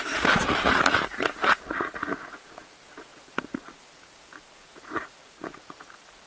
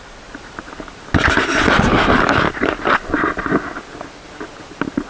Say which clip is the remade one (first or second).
first